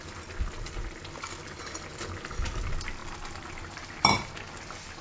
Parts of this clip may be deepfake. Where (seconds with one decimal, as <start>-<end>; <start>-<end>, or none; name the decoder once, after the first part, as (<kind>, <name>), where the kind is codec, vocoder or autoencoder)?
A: none